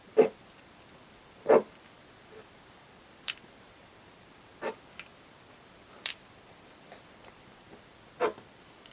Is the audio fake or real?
fake